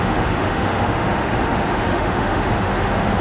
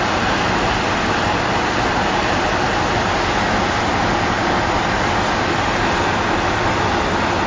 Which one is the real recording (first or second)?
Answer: second